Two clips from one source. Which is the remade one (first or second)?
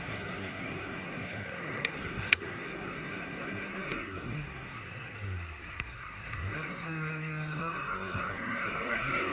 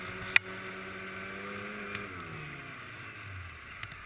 first